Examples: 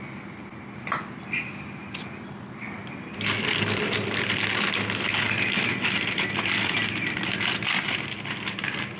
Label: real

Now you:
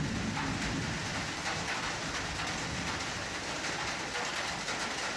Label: real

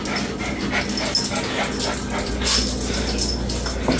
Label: real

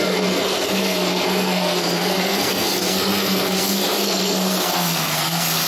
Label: fake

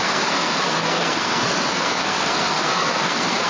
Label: fake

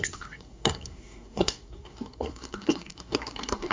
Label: fake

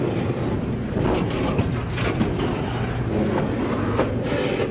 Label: real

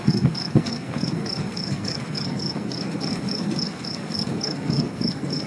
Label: fake